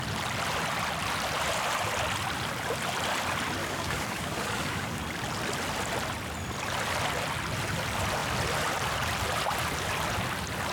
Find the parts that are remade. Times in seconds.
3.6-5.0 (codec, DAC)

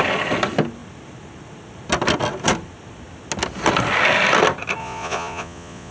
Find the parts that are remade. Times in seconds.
4.8-5.9 (vocoder, Vocos)